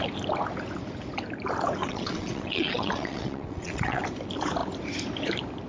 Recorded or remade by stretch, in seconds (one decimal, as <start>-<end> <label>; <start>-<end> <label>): 0.0-1.8 recorded; 1.8-4.0 remade; 4.0-5.7 recorded